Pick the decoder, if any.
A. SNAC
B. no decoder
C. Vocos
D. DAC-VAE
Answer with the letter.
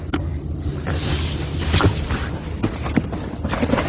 B